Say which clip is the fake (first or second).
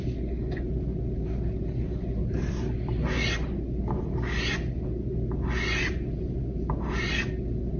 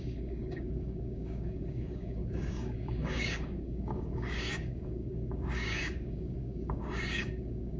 second